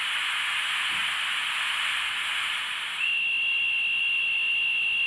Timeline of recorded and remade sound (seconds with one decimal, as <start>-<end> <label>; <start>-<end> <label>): 0.0-5.1 recorded